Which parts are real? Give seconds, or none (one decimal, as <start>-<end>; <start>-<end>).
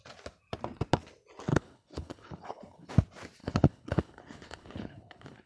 0.0-1.5; 2.9-3.4